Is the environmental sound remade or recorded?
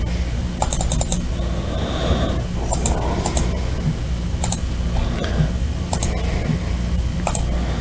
recorded